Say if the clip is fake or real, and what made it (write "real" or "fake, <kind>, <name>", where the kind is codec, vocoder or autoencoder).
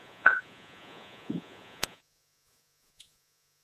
fake, vocoder, Vocos